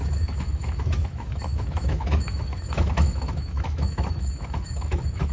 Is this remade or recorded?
remade